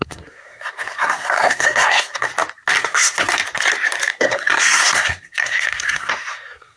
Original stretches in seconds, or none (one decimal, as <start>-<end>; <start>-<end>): 2.3-2.8; 3.4-4.1